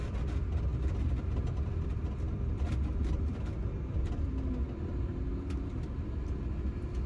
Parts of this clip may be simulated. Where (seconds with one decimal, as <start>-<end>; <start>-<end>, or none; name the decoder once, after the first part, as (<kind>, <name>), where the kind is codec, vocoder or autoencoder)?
none